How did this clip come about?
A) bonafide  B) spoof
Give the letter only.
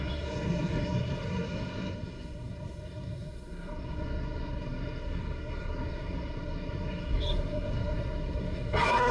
B